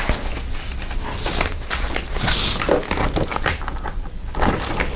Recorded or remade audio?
recorded